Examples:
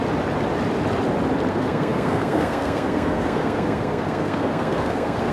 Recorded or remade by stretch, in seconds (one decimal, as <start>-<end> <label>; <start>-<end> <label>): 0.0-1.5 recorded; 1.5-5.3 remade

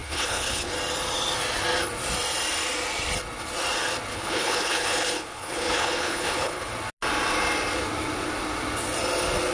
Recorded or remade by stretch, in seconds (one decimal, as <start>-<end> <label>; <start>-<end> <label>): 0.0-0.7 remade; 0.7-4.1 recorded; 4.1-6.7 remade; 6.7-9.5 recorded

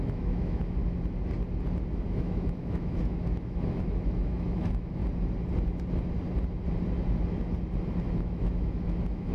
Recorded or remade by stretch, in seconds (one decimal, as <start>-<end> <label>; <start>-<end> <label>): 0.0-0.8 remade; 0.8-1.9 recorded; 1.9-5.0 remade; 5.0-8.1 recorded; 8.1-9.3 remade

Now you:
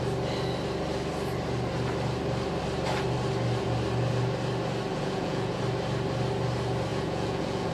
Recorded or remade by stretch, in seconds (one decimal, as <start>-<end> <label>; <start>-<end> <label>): 0.0-4.9 recorded; 4.9-5.6 remade; 5.6-6.9 recorded; 6.9-7.7 remade

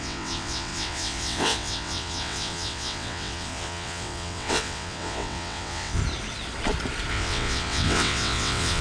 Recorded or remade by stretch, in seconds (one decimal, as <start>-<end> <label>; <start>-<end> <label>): 0.0-6.0 remade; 6.0-7.1 recorded; 7.1-8.8 remade

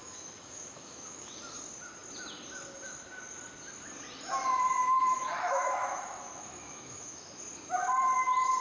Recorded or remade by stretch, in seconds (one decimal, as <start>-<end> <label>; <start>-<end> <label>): 0.0-1.4 remade; 1.4-5.1 recorded; 5.1-7.4 remade; 7.4-8.6 recorded